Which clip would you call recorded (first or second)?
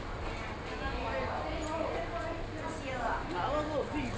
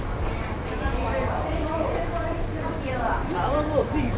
first